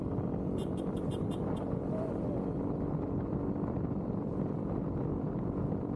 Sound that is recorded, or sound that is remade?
remade